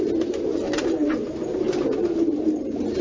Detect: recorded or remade recorded